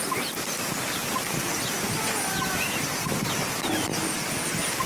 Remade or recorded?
recorded